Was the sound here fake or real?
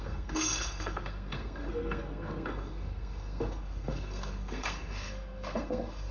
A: fake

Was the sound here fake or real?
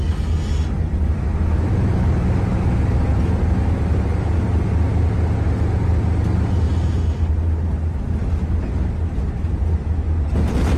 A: real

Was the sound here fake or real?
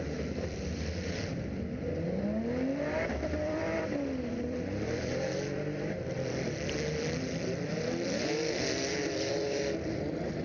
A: fake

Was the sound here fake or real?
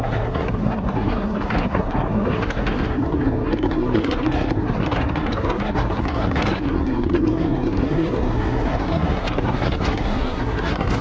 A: fake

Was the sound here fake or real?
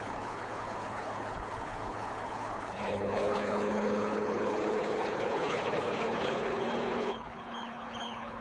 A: fake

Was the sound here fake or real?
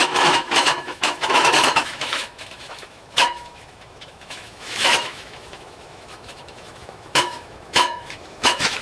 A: fake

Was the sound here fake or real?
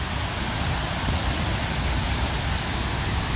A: real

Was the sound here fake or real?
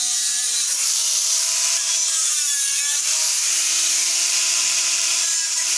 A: fake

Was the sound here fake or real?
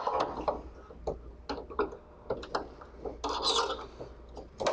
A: real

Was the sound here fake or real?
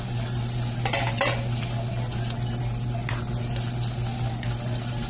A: real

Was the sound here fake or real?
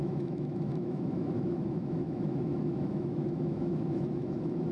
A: fake